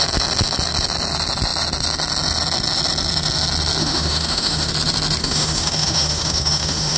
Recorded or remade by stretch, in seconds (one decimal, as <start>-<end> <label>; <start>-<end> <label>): 0.0-3.8 recorded; 3.8-4.7 remade; 4.7-5.2 recorded; 5.2-7.0 remade